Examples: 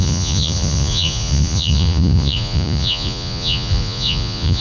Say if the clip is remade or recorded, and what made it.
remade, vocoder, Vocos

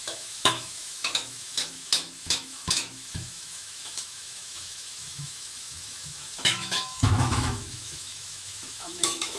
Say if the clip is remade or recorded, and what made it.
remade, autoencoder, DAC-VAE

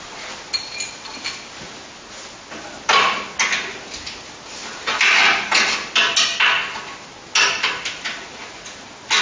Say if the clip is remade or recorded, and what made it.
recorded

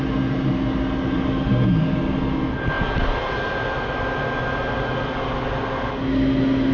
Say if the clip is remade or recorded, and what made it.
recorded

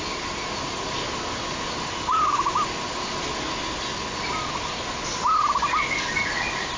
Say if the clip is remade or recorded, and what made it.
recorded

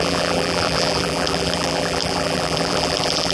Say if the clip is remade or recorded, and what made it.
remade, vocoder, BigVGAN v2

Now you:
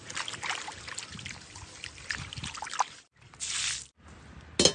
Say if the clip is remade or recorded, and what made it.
recorded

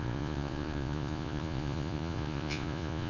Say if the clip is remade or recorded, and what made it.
remade, vocoder, Vocos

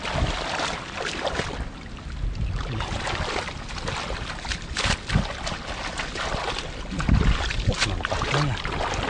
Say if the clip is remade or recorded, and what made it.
recorded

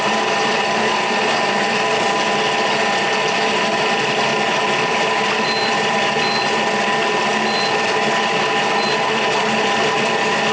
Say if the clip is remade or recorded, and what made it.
recorded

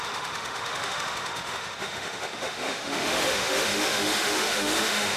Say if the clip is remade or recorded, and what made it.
remade, autoencoder, DAC-VAE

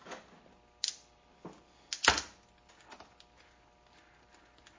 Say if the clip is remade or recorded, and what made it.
recorded